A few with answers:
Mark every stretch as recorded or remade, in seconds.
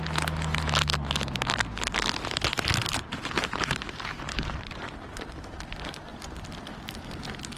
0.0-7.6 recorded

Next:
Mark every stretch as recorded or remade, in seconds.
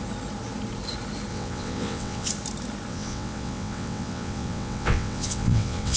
0.0-1.3 recorded; 1.3-2.3 remade; 2.3-2.9 recorded; 2.9-6.0 remade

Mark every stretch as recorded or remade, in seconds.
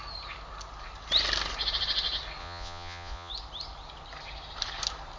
0.0-2.4 recorded; 2.4-3.3 remade; 3.3-5.2 recorded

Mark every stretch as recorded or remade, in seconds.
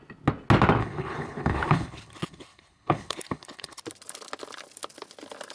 0.0-0.8 recorded; 0.8-3.8 remade; 3.8-5.5 recorded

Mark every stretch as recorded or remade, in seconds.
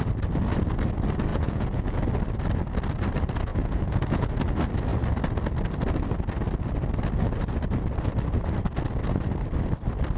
0.0-1.3 recorded; 1.3-2.0 remade; 2.0-3.5 recorded; 3.5-4.3 remade; 4.3-10.2 recorded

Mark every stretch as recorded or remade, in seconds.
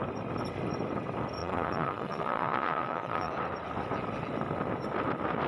0.0-1.4 recorded; 1.4-3.3 remade; 3.3-5.5 recorded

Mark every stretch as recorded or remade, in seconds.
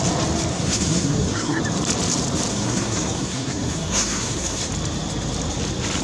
0.0-0.5 recorded; 0.5-1.6 remade; 1.6-2.5 recorded; 2.5-4.7 remade; 4.7-6.0 recorded